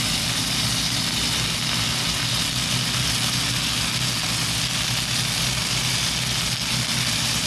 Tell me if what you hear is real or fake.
real